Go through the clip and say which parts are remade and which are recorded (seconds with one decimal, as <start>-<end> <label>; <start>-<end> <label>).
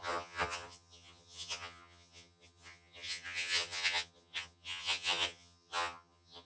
0.0-6.4 remade